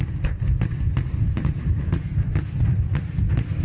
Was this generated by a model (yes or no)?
no